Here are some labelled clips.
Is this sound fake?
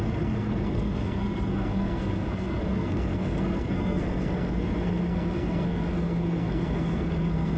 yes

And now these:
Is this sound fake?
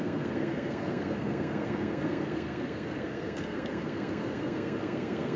yes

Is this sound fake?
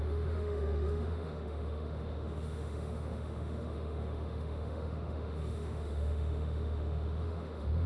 yes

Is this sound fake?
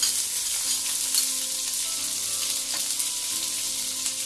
no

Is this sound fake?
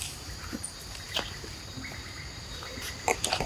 yes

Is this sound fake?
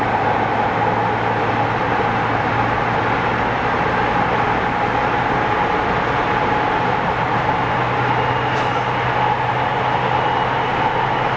no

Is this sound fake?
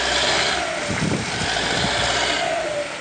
no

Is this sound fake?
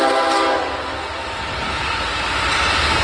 no